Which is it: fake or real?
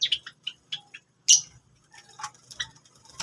real